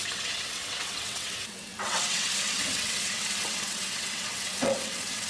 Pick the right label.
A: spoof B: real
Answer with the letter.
A